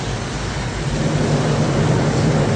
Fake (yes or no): no